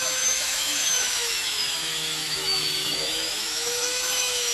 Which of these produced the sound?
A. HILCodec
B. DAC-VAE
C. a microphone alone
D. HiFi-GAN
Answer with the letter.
B